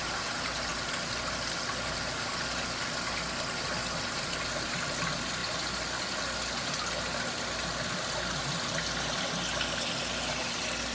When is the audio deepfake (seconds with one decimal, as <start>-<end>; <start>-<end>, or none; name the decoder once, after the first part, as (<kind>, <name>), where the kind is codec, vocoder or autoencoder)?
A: none